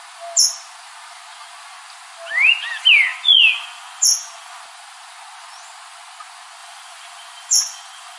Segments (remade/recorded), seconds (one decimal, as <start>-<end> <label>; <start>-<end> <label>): 0.0-3.1 recorded; 3.1-4.6 remade; 4.6-6.6 recorded; 6.6-8.2 remade